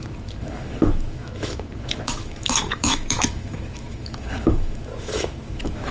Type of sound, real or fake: fake